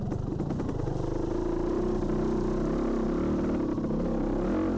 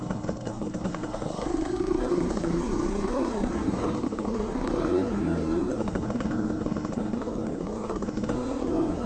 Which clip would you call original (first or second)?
first